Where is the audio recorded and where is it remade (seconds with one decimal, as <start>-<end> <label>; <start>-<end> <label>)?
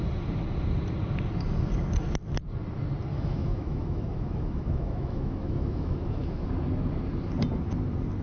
0.0-3.1 recorded; 3.1-6.5 remade; 6.5-8.2 recorded